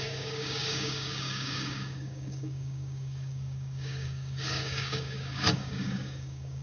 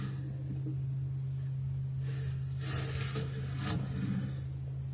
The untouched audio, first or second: second